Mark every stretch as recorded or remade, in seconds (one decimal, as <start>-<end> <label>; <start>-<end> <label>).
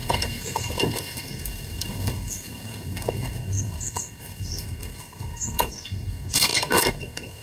0.0-7.4 remade